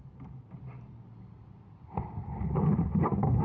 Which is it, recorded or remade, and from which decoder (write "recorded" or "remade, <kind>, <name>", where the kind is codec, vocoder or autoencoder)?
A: recorded